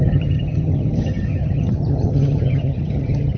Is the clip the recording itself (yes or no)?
no